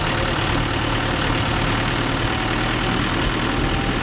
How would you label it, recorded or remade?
recorded